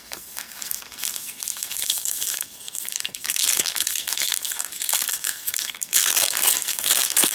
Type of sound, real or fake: fake